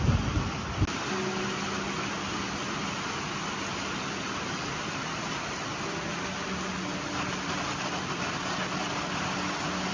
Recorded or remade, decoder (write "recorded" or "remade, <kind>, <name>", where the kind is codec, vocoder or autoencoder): recorded